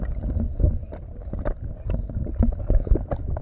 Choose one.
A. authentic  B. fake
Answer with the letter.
A